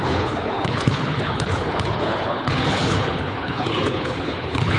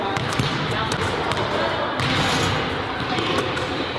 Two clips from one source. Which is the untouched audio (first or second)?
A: second